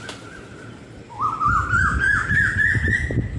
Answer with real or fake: real